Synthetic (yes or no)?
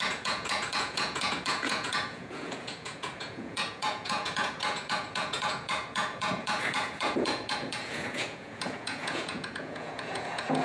yes